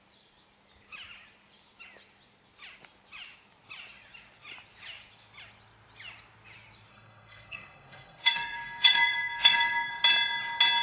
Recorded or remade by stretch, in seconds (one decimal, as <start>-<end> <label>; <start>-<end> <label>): 0.0-6.9 recorded; 6.9-9.9 remade; 9.9-10.8 recorded